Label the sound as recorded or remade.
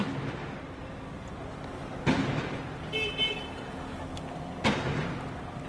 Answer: recorded